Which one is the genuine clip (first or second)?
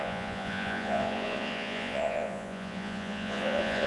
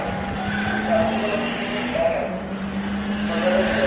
second